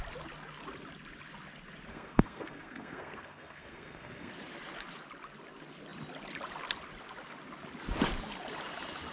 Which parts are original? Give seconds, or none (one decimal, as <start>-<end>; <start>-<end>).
0.0-1.9; 4.3-9.1